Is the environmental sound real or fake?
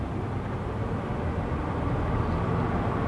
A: real